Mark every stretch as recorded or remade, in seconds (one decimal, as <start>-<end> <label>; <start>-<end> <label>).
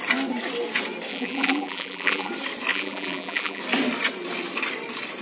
0.0-1.1 recorded; 1.1-2.3 remade; 2.3-2.7 recorded; 2.7-3.6 remade; 3.6-5.2 recorded